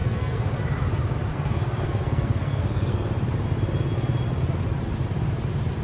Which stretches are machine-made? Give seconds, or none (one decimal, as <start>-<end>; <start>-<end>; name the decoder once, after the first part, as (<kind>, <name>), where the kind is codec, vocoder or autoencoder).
0.0-0.5 (codec, SNAC); 1.3-3.1

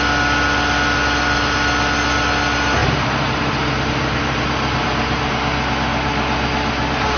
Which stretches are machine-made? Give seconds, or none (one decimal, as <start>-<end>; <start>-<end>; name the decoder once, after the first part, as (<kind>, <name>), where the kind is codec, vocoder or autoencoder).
2.8-5.3 (vocoder, BigVGAN v2)